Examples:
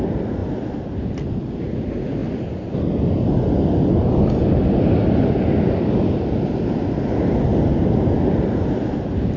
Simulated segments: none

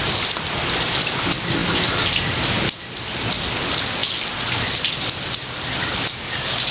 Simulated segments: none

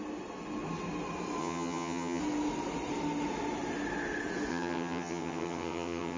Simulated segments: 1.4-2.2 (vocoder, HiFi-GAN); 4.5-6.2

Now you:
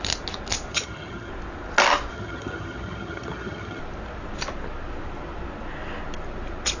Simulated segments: 0.7-1.3 (vocoder, HiFi-GAN); 2.1-3.8